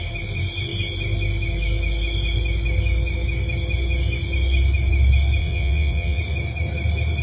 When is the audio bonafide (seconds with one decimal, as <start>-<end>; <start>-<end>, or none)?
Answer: 0.0-5.4; 6.2-7.2